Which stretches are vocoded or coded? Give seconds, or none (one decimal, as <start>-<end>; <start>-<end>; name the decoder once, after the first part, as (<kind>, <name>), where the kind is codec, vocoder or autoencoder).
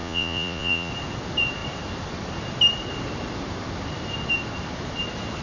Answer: 0.0-0.9 (vocoder, Vocos)